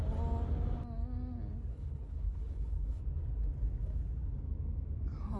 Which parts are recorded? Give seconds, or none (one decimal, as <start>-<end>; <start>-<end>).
0.0-1.7; 3.0-5.4